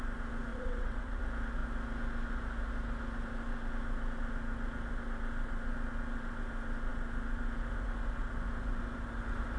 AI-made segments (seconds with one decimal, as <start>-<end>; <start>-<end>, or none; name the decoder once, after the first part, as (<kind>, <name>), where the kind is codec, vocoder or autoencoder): 0.5-1.2 (vocoder, WaveNeXt)